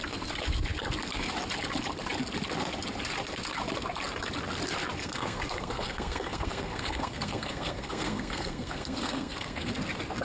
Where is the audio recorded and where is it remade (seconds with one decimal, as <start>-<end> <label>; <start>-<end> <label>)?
0.0-5.0 recorded; 5.0-9.7 remade; 9.7-10.2 recorded

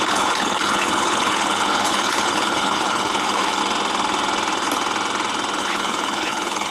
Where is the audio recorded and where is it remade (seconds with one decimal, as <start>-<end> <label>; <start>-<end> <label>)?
0.0-3.6 remade; 3.6-5.6 recorded; 5.6-6.7 remade

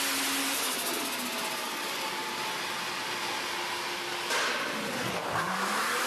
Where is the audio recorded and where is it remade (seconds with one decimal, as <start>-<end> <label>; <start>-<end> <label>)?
0.0-0.4 recorded; 0.4-1.0 remade; 1.0-1.6 recorded; 1.6-2.2 remade; 2.2-5.0 recorded; 5.0-6.1 remade

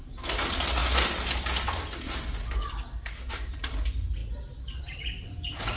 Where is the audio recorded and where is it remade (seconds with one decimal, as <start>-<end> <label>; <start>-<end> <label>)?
0.0-5.8 recorded